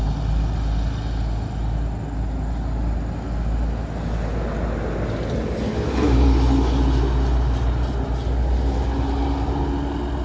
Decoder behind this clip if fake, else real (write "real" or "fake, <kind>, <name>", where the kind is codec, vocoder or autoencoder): real